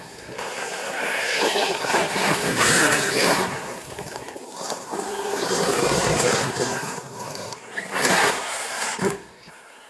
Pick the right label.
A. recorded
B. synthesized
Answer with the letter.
B